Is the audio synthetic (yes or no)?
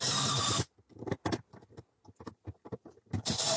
no